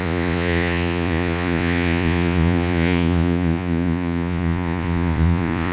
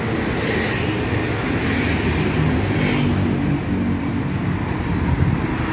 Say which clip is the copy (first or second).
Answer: first